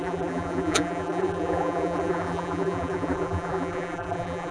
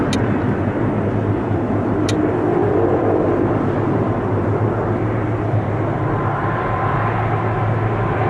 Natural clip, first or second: second